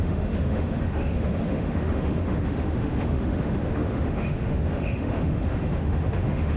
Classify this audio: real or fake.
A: fake